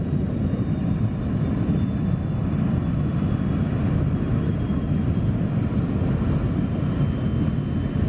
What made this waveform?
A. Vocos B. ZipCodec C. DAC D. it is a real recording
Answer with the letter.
D